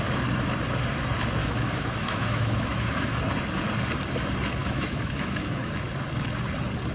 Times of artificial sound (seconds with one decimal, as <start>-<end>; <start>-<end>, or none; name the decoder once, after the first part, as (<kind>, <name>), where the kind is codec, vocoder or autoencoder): 1.4-3.2 (autoencoder, DAC-VAE); 4.6-5.7